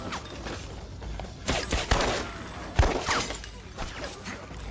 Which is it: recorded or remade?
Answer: recorded